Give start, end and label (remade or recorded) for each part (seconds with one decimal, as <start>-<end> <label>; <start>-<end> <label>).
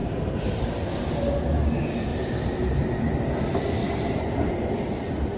0.0-0.6 remade; 0.6-3.8 recorded; 3.8-4.5 remade; 4.5-5.4 recorded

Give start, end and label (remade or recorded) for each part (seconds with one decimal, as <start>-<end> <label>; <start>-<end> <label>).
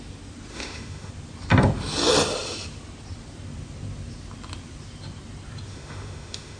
0.0-0.5 recorded; 0.5-1.1 remade; 1.1-5.7 recorded; 5.7-6.6 remade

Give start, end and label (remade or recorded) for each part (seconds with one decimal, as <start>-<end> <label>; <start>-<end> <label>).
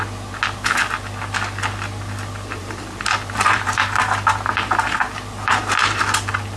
0.0-2.6 recorded; 2.6-6.0 remade; 6.0-6.6 recorded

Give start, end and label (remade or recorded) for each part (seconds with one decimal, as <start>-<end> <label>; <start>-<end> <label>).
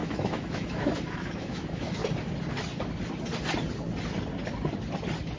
0.0-2.0 remade; 2.0-5.4 recorded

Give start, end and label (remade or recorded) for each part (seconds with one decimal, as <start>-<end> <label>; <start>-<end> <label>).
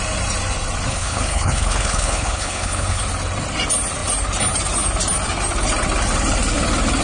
0.0-0.9 recorded; 0.9-3.0 remade; 3.0-7.0 recorded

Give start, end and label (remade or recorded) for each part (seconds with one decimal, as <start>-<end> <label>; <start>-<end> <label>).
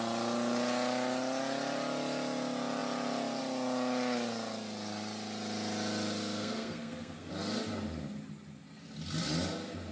0.0-6.2 recorded; 6.2-7.3 remade; 7.3-9.9 recorded